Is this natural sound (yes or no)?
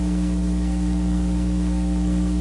no